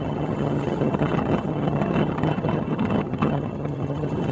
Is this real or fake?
fake